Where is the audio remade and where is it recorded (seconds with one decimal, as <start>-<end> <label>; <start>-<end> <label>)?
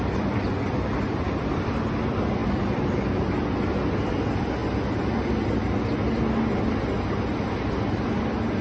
0.0-8.6 recorded